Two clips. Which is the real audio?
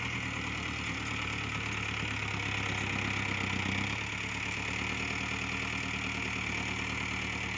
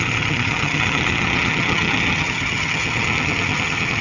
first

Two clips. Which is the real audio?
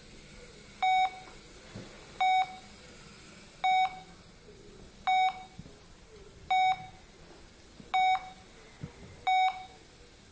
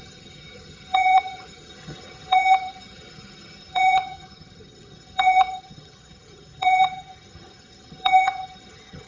first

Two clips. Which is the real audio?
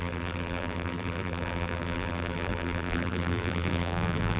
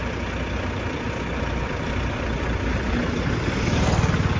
second